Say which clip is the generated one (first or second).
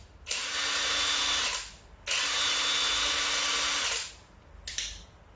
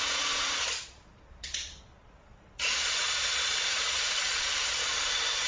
second